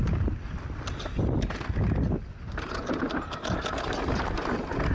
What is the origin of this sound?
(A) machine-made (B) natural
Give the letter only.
B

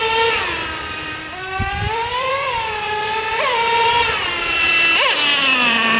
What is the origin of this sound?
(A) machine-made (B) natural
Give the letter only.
A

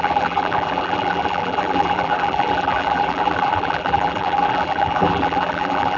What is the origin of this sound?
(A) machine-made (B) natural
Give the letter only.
A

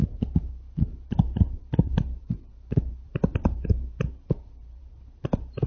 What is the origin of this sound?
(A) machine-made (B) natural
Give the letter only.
A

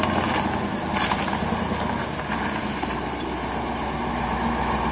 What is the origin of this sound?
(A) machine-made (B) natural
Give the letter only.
B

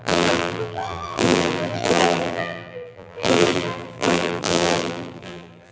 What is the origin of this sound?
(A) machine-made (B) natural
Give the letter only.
A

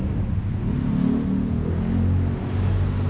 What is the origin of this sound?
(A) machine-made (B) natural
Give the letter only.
B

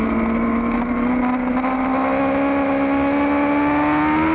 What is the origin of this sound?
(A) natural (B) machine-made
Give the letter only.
A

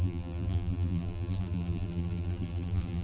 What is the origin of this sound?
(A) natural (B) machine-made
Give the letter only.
B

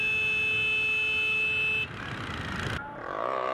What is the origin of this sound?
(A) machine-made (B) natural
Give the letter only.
B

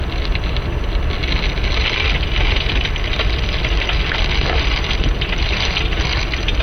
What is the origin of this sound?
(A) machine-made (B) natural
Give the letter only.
B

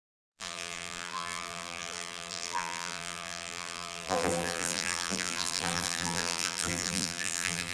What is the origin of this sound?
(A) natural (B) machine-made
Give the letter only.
B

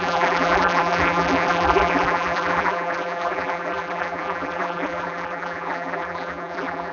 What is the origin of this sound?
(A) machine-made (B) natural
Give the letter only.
A